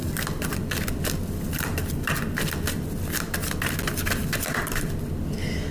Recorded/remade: recorded